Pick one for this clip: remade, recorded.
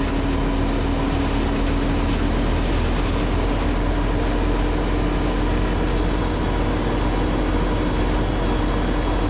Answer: recorded